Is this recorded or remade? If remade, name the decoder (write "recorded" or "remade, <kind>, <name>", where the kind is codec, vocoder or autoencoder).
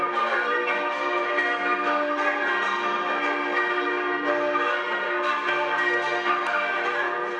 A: remade, codec, SNAC